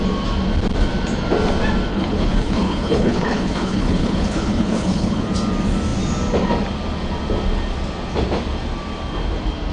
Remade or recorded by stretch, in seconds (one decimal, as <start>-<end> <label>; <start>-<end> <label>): 0.0-1.9 recorded; 1.9-5.2 remade; 5.2-9.7 recorded

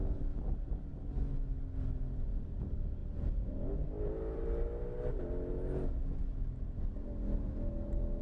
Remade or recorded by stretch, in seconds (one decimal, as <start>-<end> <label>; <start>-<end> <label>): 0.0-8.2 recorded